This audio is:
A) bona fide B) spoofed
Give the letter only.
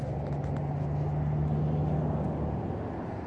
A